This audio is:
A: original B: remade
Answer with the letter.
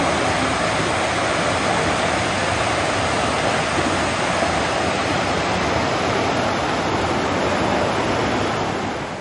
A